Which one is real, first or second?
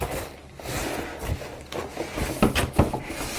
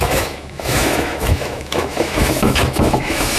first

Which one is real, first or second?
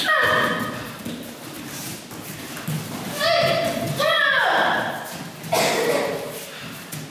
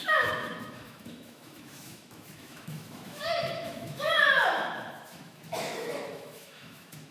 first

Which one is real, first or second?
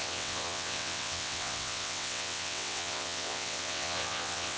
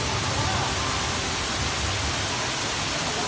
second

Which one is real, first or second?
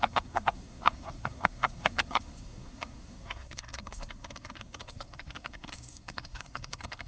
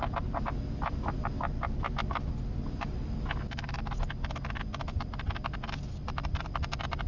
second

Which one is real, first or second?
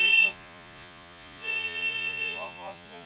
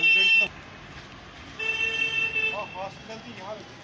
second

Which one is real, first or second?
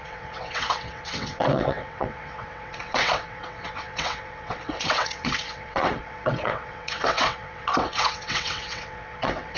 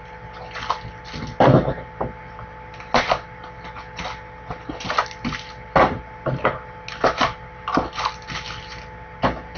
second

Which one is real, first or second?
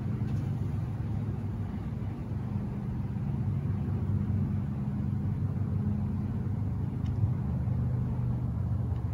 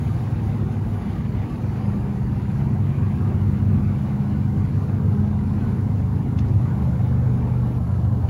first